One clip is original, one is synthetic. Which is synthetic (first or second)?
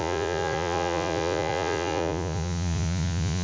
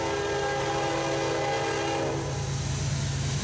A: first